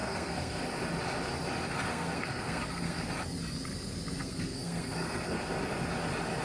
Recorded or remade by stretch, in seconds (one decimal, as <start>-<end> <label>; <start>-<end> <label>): 0.0-0.6 remade; 0.6-1.9 recorded; 1.9-3.1 remade; 3.1-4.2 recorded; 4.2-5.4 remade; 5.4-6.4 recorded